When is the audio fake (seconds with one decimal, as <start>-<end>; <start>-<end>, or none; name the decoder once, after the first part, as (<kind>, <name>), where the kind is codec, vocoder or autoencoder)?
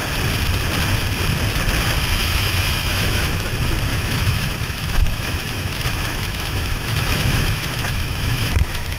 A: 2.2-3.5 (autoencoder, DAC-VAE); 3.9-9.0